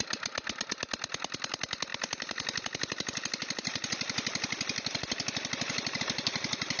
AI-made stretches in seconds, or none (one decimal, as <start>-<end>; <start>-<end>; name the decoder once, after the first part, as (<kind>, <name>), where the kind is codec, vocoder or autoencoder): none